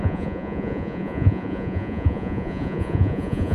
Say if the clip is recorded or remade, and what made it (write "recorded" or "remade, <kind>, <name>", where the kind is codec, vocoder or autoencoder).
remade, vocoder, Vocos